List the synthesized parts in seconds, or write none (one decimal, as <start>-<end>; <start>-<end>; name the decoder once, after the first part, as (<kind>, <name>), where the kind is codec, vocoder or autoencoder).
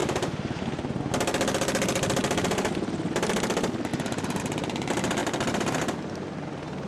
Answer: 0.0-1.0 (vocoder, BigVGAN v2); 2.2-2.7; 3.9-4.4